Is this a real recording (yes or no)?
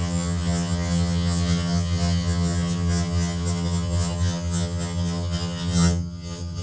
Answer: no